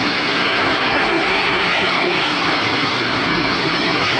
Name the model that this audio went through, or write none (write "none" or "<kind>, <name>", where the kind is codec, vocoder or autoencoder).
codec, SNAC